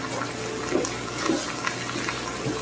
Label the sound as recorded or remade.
recorded